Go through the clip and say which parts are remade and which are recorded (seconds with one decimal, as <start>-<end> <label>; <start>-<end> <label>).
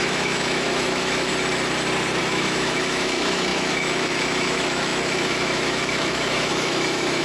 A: 0.0-1.3 remade; 1.3-2.2 recorded; 2.2-7.2 remade